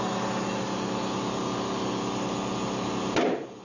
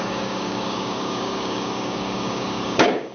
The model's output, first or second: second